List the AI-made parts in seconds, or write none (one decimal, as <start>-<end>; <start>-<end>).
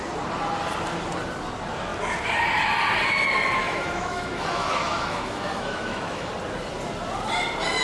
3.6-6.3